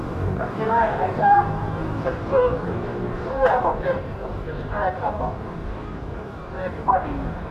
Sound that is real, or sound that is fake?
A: fake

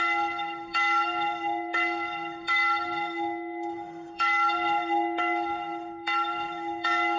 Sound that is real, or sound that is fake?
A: fake